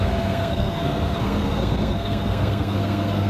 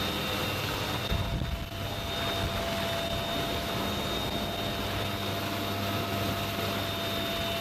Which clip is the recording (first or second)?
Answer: second